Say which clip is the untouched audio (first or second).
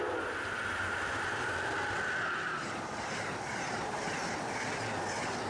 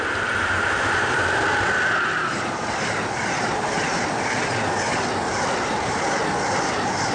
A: first